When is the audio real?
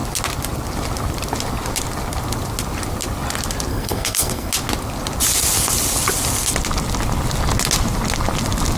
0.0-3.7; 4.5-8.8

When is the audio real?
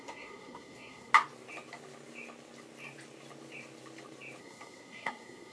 1.1-4.4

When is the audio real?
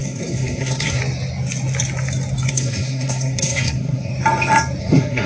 1.0-2.5; 4.1-4.8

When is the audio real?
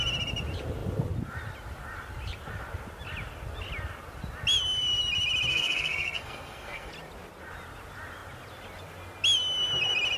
0.0-5.5; 6.9-10.2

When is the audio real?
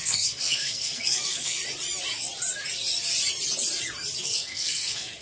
1.6-4.2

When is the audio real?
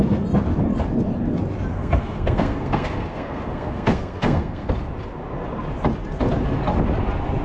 0.0-1.7; 4.7-7.4